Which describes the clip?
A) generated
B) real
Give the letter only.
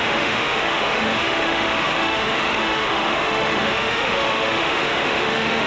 A